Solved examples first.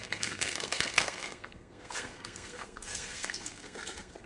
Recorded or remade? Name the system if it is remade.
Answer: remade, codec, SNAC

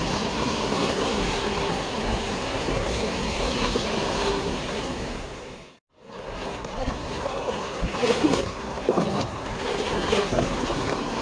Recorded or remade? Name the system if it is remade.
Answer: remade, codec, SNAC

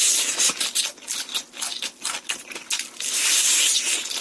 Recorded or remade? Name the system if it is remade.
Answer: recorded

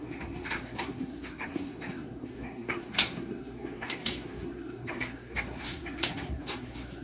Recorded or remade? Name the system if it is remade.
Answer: remade, codec, SNAC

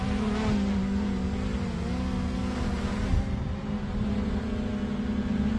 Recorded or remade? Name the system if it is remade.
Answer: recorded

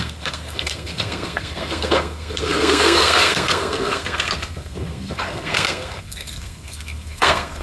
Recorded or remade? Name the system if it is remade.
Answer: remade, codec, SNAC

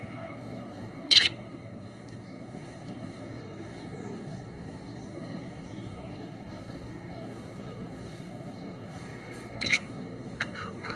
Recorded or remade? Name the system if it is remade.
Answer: remade, codec, SNAC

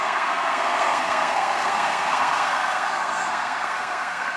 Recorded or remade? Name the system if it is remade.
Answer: remade, codec, SNAC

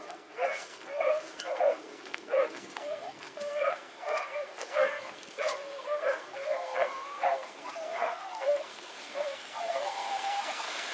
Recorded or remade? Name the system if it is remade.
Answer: remade, codec, SNAC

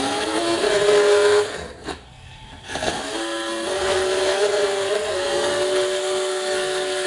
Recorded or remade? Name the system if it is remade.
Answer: remade, codec, SNAC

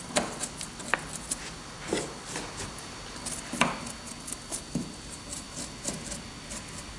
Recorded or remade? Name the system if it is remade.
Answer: recorded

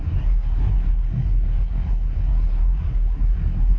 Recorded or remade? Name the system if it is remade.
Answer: remade, codec, SNAC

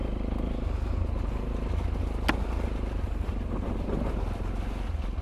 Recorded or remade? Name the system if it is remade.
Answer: recorded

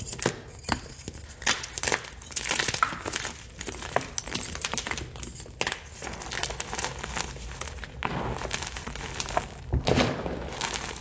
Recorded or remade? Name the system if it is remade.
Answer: recorded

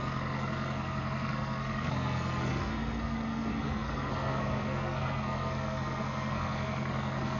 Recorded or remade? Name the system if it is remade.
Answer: remade, codec, SNAC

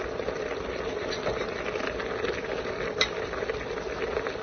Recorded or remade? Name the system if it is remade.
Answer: recorded